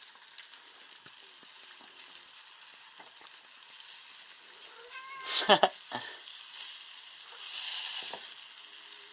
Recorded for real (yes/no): yes